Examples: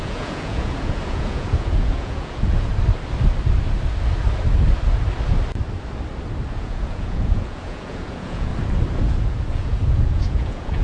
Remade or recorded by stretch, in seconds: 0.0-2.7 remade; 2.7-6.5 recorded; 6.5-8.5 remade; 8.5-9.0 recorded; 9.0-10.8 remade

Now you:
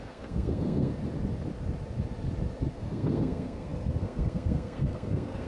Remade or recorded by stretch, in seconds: 0.0-0.9 remade; 0.9-2.7 recorded; 2.7-5.5 remade

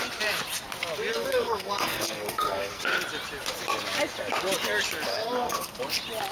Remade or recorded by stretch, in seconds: 0.0-1.1 recorded; 1.1-2.8 remade; 2.8-5.1 recorded; 5.1-5.8 remade; 5.8-6.3 recorded

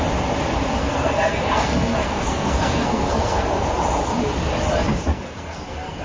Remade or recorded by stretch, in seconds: 0.0-0.8 recorded; 0.8-3.7 remade; 3.7-5.1 recorded; 5.1-6.0 remade

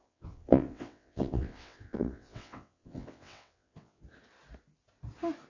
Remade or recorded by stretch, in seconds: 0.0-4.0 remade; 4.0-5.5 recorded

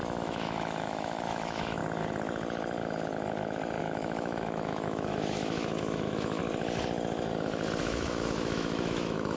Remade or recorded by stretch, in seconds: 0.0-1.8 remade; 1.8-3.8 recorded; 3.8-6.4 remade; 6.4-7.8 recorded; 7.8-9.4 remade

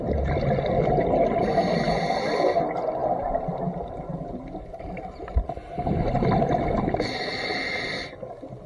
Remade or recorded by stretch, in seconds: 0.0-8.7 recorded

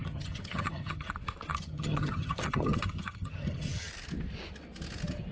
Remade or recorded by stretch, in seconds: 0.0-1.1 remade; 1.1-1.5 recorded; 1.5-3.9 remade; 3.9-5.3 recorded